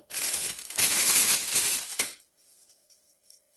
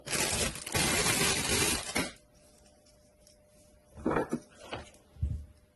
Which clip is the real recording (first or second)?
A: second